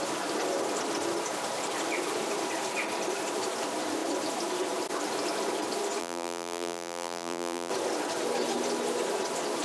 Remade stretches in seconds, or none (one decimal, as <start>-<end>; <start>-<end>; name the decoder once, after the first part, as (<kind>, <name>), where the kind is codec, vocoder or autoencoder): 6.0-7.7 (vocoder, BigVGAN v2)

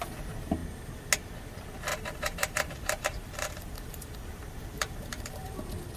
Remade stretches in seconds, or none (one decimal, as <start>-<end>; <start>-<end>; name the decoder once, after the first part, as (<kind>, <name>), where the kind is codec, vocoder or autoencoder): 1.9-5.5 (vocoder, BigVGAN v2)

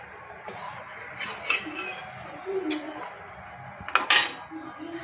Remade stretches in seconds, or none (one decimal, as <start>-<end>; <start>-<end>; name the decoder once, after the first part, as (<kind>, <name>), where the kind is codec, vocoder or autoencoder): none

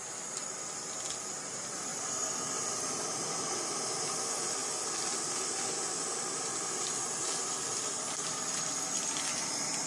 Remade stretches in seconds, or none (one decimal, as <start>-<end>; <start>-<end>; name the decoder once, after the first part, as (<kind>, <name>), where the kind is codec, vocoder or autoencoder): 1.9-4.0 (vocoder, BigVGAN v2); 4.6-8.9

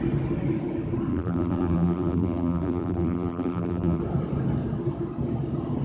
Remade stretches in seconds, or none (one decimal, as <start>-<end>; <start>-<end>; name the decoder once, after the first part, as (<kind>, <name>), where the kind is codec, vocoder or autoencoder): 1.1-4.0 (vocoder, BigVGAN v2)

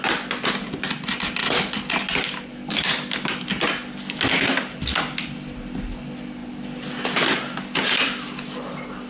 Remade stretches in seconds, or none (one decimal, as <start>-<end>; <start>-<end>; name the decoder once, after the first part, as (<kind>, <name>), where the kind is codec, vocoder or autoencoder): none